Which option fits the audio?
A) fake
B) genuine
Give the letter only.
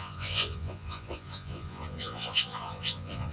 A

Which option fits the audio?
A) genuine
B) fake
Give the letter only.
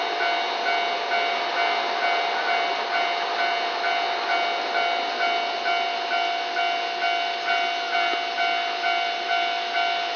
A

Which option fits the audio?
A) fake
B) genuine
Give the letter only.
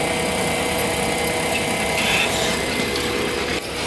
B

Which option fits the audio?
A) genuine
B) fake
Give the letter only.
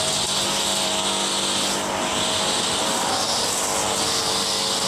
A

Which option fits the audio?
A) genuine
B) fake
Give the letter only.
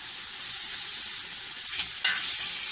A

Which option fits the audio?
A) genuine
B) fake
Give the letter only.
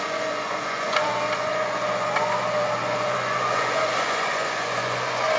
B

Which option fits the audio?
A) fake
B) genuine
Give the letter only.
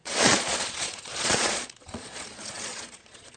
A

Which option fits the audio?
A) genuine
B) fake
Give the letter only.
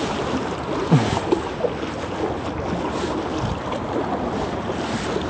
A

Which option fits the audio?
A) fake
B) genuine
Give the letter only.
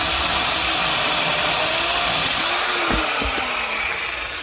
B